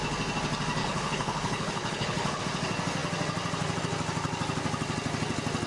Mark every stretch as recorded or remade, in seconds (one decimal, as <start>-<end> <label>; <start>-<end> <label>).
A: 0.0-0.8 recorded; 0.8-2.4 remade; 2.4-5.7 recorded